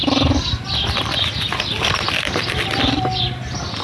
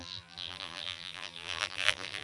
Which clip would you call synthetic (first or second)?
second